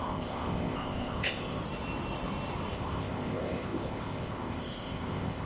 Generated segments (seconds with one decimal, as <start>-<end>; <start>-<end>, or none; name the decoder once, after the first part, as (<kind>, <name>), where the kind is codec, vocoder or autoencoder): 0.0-1.6 (codec, ZipCodec); 2.7-5.5